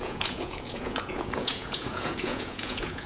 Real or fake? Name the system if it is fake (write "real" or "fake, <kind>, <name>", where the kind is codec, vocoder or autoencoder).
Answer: fake, vocoder, Vocos